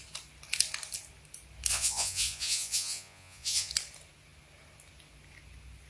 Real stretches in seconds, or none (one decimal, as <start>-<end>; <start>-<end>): 0.0-1.7; 3.7-5.9